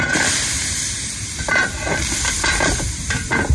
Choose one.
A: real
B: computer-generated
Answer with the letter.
A